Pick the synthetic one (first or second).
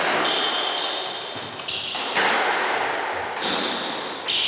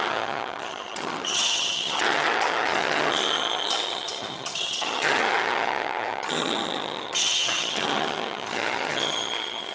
second